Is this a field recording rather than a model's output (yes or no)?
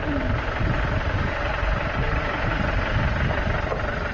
no